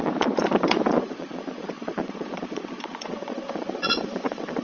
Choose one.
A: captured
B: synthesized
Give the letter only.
B